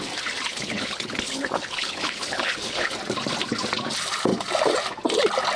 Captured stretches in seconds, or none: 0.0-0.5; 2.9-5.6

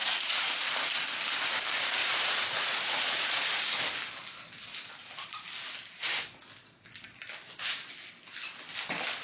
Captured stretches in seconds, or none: 0.5-2.0; 3.6-9.2

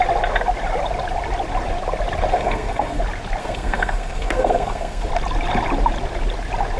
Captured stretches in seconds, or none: 0.0-2.3; 3.0-3.4; 5.1-6.8

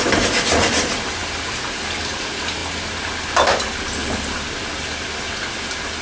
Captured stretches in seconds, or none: 0.0-6.0

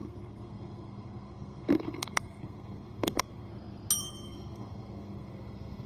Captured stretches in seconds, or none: 3.5-4.0